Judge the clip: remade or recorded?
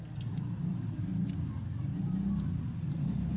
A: recorded